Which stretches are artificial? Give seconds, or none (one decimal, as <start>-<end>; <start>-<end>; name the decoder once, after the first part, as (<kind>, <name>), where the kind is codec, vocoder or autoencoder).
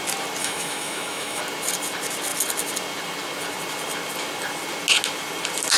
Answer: 0.4-1.4 (autoencoder, DAC-VAE)